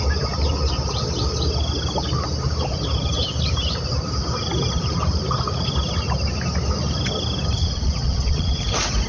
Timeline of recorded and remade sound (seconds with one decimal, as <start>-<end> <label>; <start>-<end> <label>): 0.0-7.6 recorded; 7.6-8.6 remade; 8.6-9.1 recorded